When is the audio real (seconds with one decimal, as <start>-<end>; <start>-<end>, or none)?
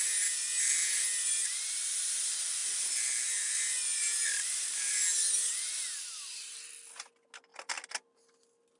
0.0-8.8